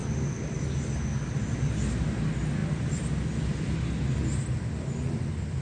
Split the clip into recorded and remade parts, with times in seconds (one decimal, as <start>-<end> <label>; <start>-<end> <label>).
0.0-5.6 recorded